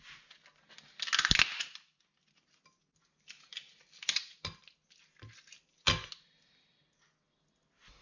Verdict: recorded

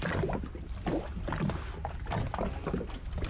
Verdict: recorded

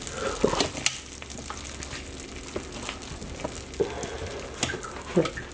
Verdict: recorded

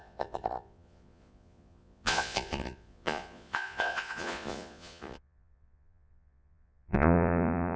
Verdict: remade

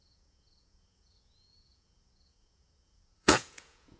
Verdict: remade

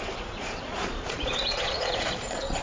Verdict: remade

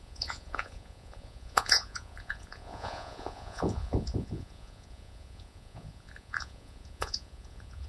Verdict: remade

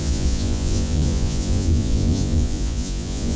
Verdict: remade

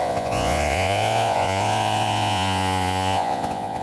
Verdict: remade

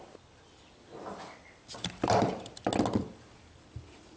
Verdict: recorded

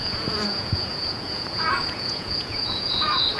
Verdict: remade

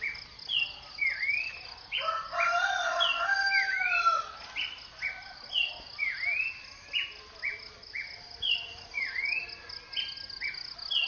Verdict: recorded